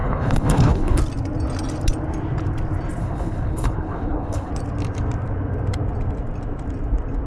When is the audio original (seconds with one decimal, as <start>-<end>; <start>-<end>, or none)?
1.0-3.0; 4.5-7.3